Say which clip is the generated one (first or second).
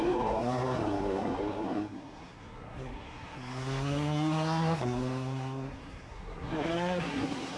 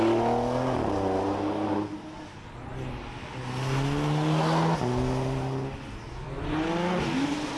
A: first